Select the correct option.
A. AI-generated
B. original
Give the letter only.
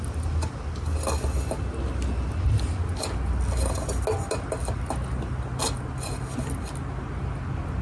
B